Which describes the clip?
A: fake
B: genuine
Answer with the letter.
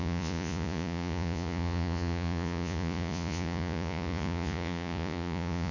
A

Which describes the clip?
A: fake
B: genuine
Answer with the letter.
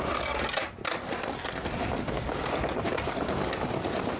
B